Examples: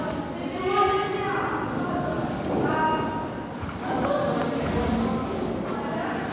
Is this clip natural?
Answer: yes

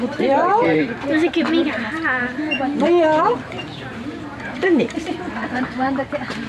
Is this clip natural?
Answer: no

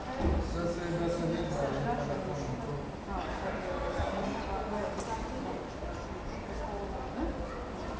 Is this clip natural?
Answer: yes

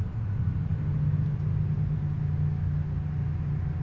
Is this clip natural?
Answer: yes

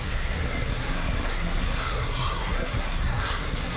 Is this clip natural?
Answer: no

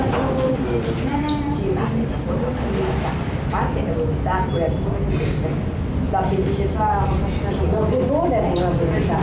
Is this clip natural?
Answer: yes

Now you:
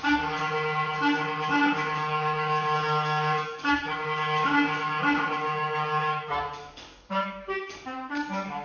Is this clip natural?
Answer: no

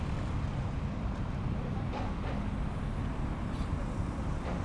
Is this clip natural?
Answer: yes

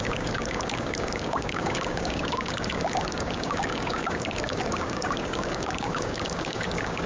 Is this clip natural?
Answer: no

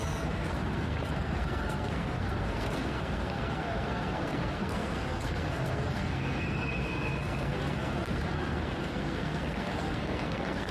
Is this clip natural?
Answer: no